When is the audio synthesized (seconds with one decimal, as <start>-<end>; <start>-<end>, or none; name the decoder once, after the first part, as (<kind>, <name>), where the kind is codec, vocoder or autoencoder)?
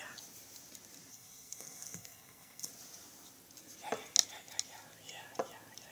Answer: 1.1-2.7 (codec, SNAC)